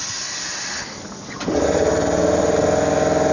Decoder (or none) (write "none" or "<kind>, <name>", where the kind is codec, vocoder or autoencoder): none